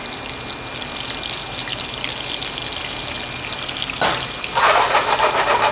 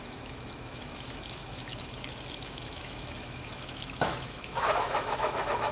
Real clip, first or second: first